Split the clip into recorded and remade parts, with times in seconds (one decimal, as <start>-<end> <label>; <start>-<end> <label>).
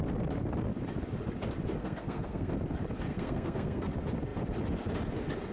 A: 0.0-1.8 recorded; 1.8-2.5 remade; 2.5-3.1 recorded; 3.1-3.9 remade; 3.9-5.5 recorded